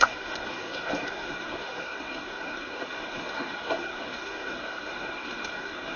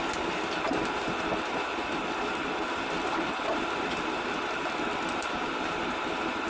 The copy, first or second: first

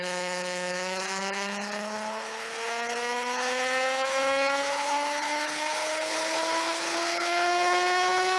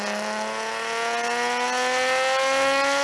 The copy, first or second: first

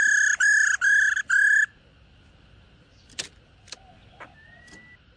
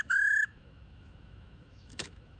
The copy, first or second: second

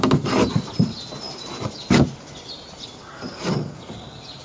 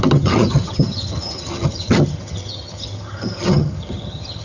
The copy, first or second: second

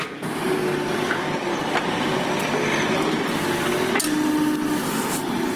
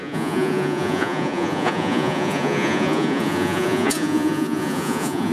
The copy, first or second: second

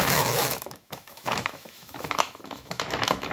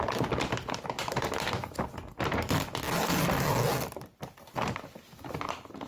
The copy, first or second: first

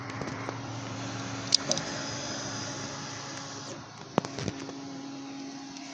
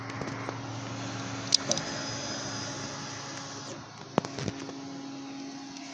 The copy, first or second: first